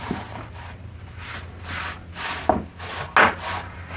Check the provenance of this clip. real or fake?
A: real